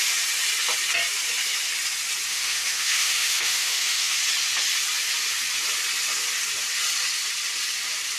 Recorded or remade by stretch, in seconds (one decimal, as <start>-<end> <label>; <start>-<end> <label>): 0.0-2.3 recorded; 2.3-4.2 remade; 4.2-8.2 recorded